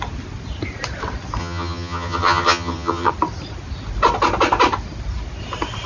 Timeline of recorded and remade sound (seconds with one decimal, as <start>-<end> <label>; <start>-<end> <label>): 0.0-1.4 recorded; 1.4-3.1 remade; 3.1-5.9 recorded